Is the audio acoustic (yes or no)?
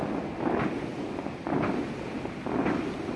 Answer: yes